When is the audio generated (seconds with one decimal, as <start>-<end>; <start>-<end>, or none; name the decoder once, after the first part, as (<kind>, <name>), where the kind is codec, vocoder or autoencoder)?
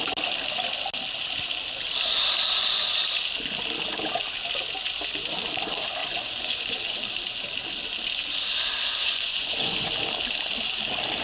6.0-7.0 (vocoder, Vocos); 9.0-9.9